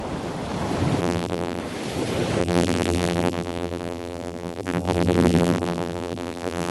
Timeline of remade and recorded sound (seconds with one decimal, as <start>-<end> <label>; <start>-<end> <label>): 0.0-1.0 recorded; 1.0-1.6 remade; 1.6-2.4 recorded; 2.4-6.7 remade